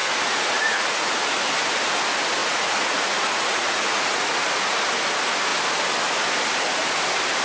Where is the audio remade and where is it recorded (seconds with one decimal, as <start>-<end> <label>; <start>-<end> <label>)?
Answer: 0.0-1.4 remade; 1.4-2.4 recorded; 2.4-4.8 remade; 4.8-7.4 recorded